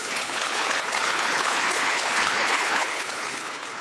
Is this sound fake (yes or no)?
yes